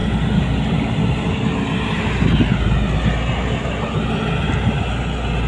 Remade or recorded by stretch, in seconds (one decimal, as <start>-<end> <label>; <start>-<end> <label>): 0.0-5.5 recorded